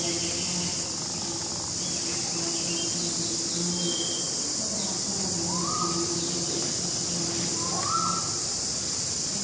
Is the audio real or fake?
real